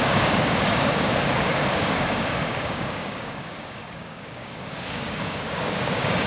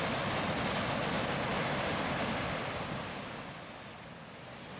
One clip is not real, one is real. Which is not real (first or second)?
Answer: first